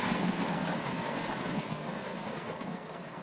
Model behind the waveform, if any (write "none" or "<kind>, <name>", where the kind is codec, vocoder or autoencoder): codec, SNAC